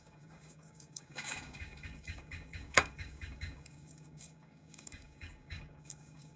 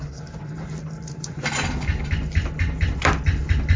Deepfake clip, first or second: first